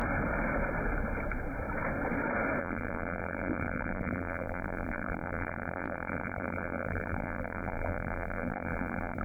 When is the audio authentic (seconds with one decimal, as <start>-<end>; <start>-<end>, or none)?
0.0-2.6